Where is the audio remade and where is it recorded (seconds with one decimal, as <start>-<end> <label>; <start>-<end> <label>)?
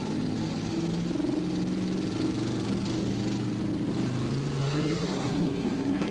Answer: 0.0-4.6 recorded; 4.6-6.1 remade